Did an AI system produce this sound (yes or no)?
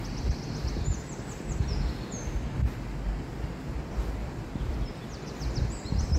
no